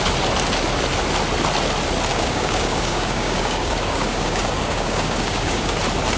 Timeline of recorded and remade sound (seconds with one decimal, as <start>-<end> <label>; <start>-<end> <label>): 0.0-2.1 recorded; 2.1-5.8 remade; 5.8-6.2 recorded